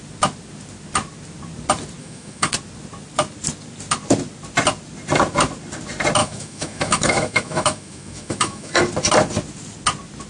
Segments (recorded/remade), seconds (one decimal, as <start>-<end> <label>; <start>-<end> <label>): 0.0-2.0 recorded; 2.0-2.5 remade; 2.5-6.2 recorded; 6.2-8.8 remade; 8.8-10.3 recorded